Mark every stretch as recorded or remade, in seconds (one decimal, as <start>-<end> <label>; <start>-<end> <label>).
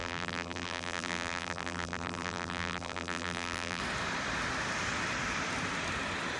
0.0-3.8 remade; 3.8-6.4 recorded